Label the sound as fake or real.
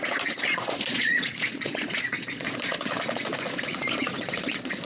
fake